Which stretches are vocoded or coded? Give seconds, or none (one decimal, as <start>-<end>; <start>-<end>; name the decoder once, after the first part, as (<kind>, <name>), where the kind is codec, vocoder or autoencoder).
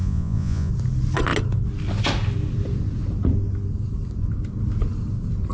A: 0.0-0.7 (vocoder, Vocos)